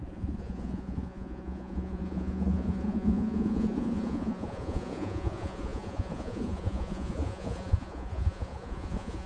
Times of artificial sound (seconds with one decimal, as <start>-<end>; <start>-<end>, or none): 0.0-9.3